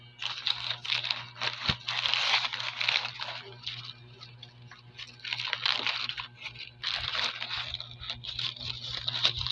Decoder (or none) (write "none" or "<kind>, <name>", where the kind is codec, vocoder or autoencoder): none